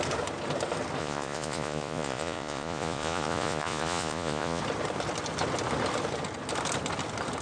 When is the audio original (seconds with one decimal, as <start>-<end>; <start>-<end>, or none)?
0.0-1.0; 4.6-7.4